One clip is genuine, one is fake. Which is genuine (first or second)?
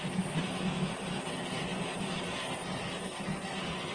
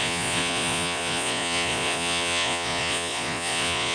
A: first